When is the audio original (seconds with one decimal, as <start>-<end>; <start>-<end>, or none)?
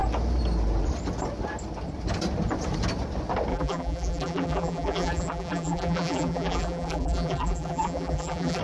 0.0-3.5